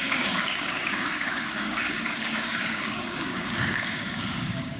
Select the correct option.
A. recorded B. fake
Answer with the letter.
B